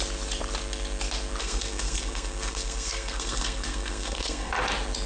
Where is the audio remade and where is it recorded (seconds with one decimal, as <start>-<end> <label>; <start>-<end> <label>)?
0.0-1.4 recorded; 1.4-4.5 remade; 4.5-5.1 recorded